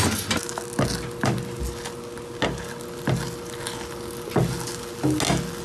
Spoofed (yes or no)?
no